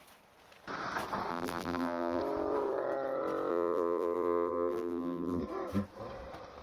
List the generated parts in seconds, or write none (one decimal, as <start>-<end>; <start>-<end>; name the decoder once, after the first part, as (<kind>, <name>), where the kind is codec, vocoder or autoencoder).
1.3-2.2 (vocoder, BigVGAN v2); 3.5-5.4